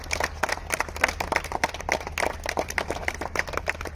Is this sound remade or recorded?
recorded